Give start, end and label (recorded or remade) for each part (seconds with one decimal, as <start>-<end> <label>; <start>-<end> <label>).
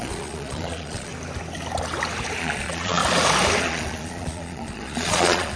0.0-1.1 remade; 1.1-2.4 recorded; 2.4-3.0 remade; 3.0-3.6 recorded; 3.6-5.6 remade